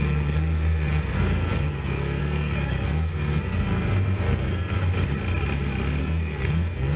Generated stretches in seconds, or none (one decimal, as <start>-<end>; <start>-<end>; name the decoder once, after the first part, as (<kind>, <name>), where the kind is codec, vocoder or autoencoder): 0.0-4.8 (codec, SNAC); 6.0-7.0

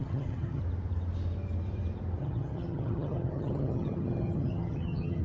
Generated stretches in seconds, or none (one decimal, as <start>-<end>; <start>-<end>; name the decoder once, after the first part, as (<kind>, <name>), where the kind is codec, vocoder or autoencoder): 0.0-0.6 (vocoder, HiFi-GAN); 2.2-5.2

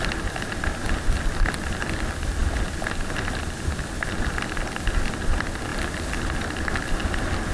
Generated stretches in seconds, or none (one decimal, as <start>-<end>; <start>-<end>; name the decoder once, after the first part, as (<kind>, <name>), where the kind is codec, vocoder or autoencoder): none

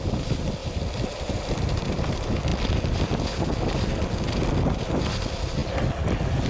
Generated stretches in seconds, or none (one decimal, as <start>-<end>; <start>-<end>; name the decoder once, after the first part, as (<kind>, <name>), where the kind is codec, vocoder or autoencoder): 0.6-2.1 (vocoder, BigVGAN v2)

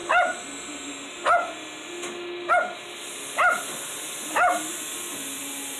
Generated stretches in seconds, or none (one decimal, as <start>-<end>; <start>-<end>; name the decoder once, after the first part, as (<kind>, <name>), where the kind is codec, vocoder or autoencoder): none

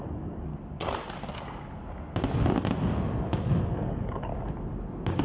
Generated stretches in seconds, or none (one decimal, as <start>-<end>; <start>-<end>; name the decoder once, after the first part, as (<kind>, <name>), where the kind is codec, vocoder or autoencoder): 0.0-0.5 (codec, DAC); 3.6-4.3

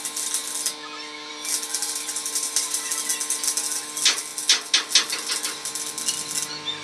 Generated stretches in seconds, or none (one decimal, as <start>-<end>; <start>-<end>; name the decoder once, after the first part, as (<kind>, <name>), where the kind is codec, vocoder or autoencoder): 1.8-2.9 (vocoder, BigVGAN v2)